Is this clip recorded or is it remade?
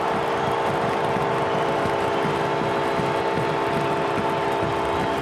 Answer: recorded